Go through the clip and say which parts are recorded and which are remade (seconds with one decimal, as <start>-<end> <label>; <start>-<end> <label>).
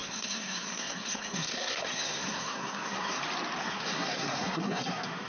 0.0-3.2 remade; 3.2-3.6 recorded; 3.6-5.3 remade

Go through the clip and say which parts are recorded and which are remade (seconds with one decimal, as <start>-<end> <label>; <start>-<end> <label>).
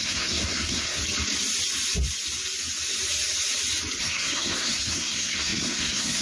0.0-1.0 remade; 1.0-4.0 recorded; 4.0-6.2 remade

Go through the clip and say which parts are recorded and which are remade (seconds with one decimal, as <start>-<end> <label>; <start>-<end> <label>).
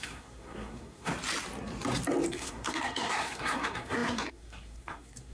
0.0-1.1 remade; 1.1-2.3 recorded; 2.3-5.3 remade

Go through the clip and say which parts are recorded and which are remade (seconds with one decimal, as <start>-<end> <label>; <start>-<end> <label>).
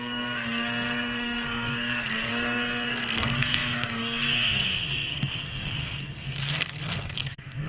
0.0-7.7 remade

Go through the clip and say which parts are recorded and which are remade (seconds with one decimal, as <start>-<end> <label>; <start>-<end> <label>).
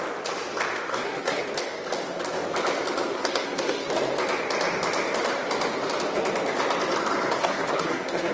0.0-0.9 recorded; 0.9-1.4 remade; 1.4-3.1 recorded; 3.1-3.9 remade; 3.9-7.4 recorded; 7.4-8.3 remade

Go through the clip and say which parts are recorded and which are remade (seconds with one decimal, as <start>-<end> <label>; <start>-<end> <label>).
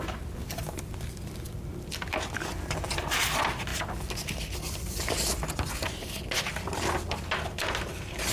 0.0-8.3 recorded